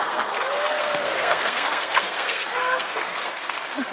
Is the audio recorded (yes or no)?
no